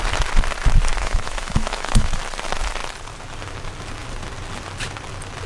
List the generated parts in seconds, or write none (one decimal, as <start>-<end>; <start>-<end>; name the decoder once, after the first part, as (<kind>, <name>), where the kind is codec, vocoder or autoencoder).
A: 0.9-2.2 (autoencoder, DAC-VAE)